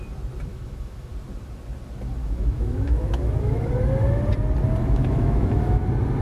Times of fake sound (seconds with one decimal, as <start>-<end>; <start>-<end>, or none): 0.5-1.1; 2.2-3.7; 4.8-5.8